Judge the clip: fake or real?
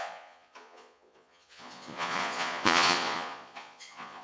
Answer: fake